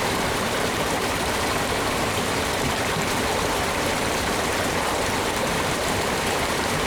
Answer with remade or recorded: remade